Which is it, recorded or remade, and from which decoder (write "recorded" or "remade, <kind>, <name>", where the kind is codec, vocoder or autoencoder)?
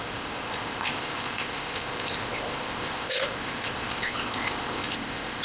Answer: remade, codec, ZipCodec